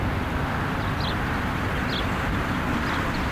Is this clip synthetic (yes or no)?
no